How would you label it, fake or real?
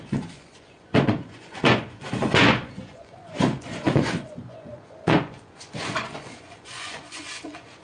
fake